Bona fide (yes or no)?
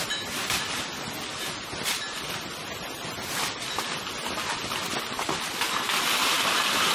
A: yes